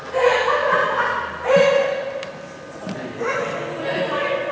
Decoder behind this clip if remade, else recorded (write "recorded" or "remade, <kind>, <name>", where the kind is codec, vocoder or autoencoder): recorded